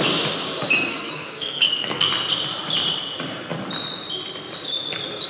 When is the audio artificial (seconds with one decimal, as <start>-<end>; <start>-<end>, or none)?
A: 0.9-2.1